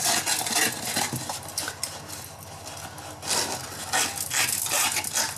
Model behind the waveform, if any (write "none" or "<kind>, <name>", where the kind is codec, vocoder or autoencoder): none